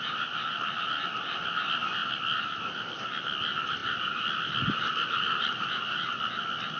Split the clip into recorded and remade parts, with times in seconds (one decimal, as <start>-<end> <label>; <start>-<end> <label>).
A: 0.0-6.8 recorded